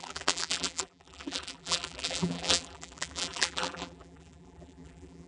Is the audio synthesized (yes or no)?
yes